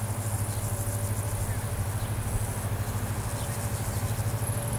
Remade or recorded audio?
recorded